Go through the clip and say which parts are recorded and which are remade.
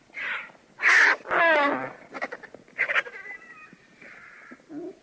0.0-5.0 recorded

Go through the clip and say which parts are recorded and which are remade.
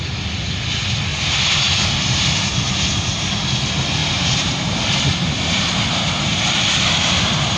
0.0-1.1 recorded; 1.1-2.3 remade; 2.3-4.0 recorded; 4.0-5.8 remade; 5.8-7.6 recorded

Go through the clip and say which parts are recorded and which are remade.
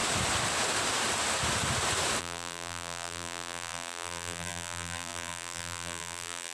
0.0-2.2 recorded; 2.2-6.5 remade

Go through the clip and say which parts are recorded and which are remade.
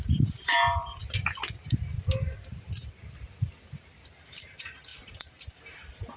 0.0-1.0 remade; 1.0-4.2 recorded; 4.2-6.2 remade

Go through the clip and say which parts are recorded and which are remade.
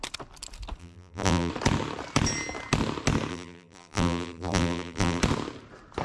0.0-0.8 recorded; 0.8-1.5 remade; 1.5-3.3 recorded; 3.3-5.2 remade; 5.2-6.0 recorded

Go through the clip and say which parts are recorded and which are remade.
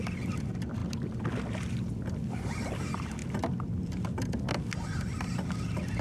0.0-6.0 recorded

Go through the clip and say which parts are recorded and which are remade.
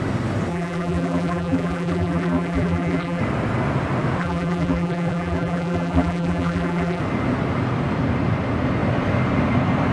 0.0-0.5 recorded; 0.5-3.2 remade; 3.2-4.2 recorded; 4.2-7.0 remade; 7.0-9.9 recorded